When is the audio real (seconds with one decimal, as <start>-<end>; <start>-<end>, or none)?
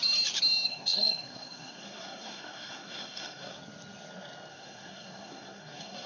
0.0-0.7; 3.6-4.5